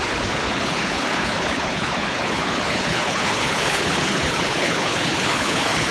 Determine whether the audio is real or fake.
fake